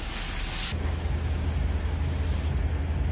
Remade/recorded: recorded